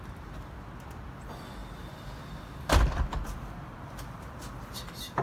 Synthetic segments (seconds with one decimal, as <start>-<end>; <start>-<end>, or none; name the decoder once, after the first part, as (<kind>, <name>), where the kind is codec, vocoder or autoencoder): none